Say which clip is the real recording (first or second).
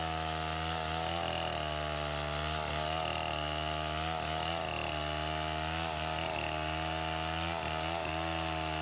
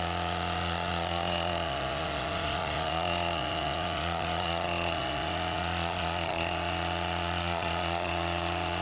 first